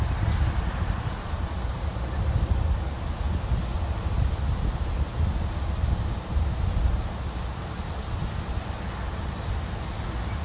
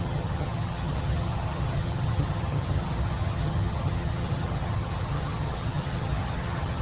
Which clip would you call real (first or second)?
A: first